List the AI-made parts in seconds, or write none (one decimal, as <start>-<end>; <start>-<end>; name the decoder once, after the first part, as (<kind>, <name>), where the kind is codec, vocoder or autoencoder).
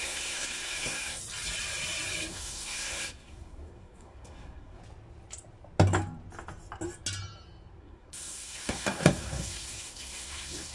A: 0.0-1.2 (codec, SNAC); 2.3-4.8; 7.8-10.7